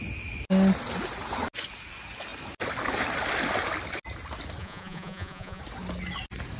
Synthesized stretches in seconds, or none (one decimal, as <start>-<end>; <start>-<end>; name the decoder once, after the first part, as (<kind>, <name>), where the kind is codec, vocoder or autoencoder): 4.6-5.6 (vocoder, Vocos)